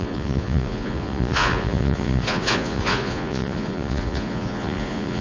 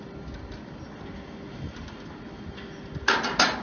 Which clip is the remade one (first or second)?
first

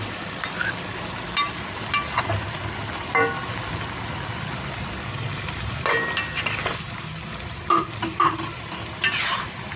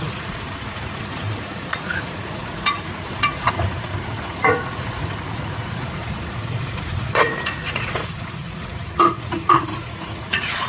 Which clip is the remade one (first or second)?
second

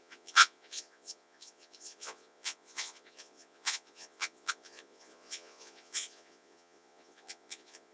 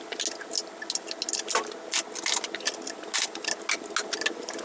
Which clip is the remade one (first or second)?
first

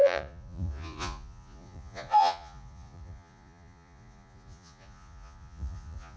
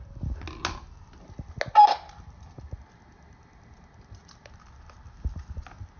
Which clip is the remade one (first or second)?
first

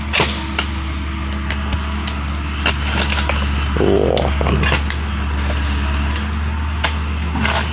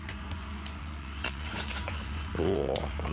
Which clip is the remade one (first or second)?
second